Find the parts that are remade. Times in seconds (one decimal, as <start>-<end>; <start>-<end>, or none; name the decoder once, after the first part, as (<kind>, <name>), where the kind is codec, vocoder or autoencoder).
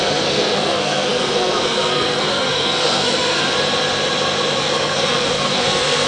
0.0-3.4 (codec, SNAC); 4.6-6.1